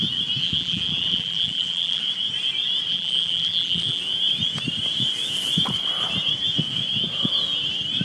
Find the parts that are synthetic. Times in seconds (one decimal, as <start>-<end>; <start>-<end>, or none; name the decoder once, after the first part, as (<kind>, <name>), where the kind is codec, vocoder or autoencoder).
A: 0.4-2.0 (vocoder, BigVGAN v2); 2.9-4.0